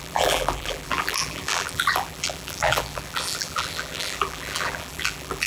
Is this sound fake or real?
fake